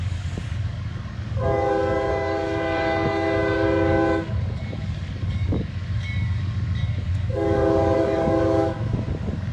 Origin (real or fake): fake